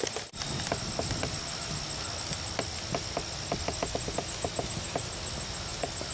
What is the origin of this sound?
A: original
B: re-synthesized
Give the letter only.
A